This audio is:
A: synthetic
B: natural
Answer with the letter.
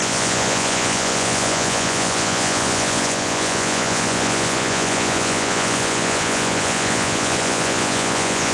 A